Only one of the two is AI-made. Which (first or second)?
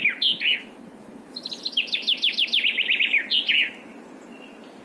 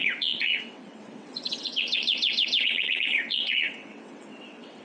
second